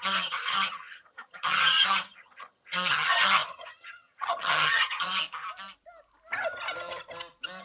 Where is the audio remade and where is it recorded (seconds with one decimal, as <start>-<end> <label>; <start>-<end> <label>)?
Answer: 0.0-5.2 remade; 5.2-7.6 recorded